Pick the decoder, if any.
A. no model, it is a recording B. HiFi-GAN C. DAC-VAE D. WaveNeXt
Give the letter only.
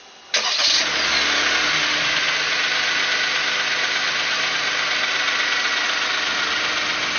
A